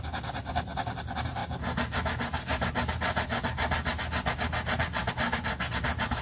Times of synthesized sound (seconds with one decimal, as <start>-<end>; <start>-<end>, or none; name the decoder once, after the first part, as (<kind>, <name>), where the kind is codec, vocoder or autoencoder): none